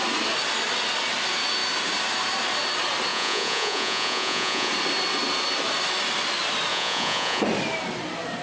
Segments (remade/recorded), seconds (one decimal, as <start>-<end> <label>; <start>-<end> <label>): 0.0-3.1 recorded; 3.1-4.7 remade; 4.7-6.7 recorded; 6.7-7.4 remade; 7.4-8.4 recorded

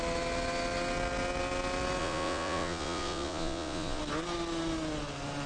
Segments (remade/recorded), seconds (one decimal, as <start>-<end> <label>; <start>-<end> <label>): 0.0-2.0 recorded; 2.0-4.0 remade; 4.0-5.5 recorded

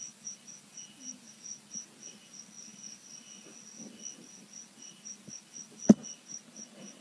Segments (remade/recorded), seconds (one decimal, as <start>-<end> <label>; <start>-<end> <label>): 0.0-7.0 recorded

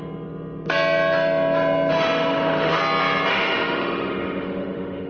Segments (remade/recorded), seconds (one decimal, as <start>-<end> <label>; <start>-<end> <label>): 0.0-1.9 recorded; 1.9-2.8 remade; 2.8-3.3 recorded; 3.3-5.1 remade

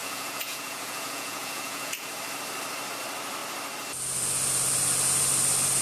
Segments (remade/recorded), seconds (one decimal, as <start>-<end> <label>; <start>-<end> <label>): 0.0-2.1 remade; 2.1-5.8 recorded